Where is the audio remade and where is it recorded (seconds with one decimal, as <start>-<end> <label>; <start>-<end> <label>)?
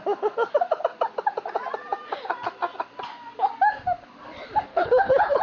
0.0-4.7 recorded; 4.7-5.4 remade